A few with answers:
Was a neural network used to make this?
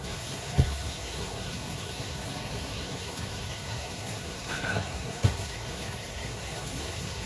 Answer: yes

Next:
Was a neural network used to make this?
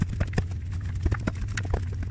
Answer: no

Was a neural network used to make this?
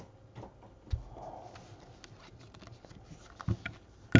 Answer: no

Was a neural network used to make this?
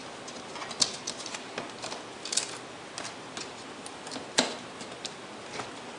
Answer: no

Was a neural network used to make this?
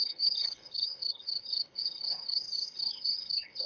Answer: yes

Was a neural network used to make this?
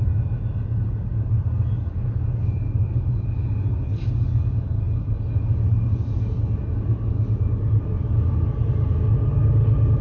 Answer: no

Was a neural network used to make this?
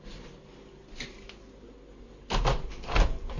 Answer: no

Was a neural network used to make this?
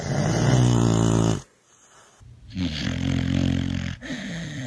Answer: no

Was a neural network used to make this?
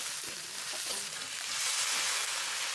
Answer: no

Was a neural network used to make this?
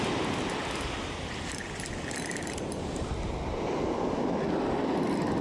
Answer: no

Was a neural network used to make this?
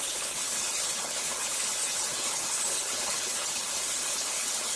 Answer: yes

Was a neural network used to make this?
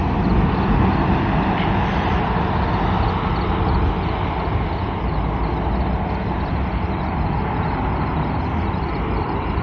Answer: no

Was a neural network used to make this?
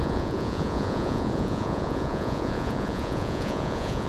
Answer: yes